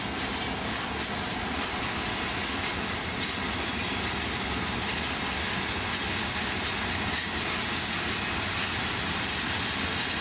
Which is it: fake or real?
real